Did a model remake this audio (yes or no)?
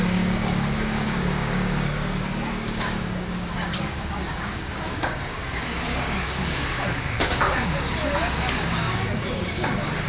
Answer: yes